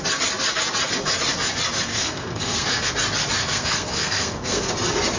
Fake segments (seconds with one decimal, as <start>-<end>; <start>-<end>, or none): 1.9-2.9; 3.4-4.7